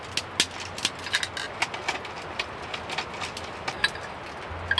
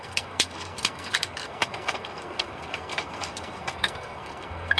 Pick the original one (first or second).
first